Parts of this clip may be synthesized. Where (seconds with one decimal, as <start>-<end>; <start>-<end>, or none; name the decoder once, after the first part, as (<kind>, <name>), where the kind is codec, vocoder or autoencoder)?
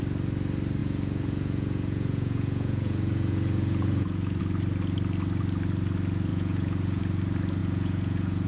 0.8-4.4 (vocoder, Vocos); 6.3-7.0; 7.6-8.5